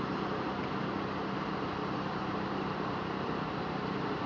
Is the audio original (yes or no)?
yes